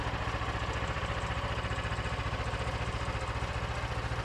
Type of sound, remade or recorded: recorded